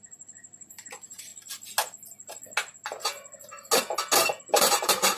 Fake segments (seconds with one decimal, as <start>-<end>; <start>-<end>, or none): 0.0-1.3; 4.4-5.2